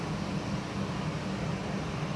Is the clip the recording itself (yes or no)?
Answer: yes